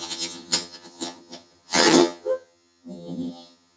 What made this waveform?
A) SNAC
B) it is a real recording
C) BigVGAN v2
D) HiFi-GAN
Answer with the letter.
D